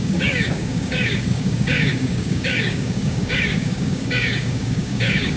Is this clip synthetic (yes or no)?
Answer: yes